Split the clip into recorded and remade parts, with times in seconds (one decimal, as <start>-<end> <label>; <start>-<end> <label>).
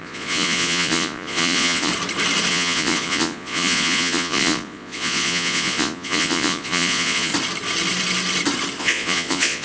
0.0-1.9 remade; 1.9-2.5 recorded; 2.5-7.3 remade; 7.3-8.8 recorded; 8.8-9.6 remade